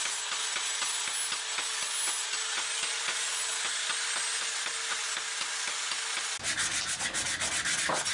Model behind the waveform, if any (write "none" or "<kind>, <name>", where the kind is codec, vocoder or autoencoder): none